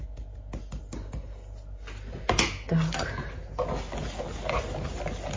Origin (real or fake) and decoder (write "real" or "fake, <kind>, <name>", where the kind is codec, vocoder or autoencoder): real